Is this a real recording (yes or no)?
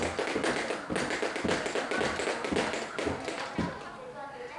yes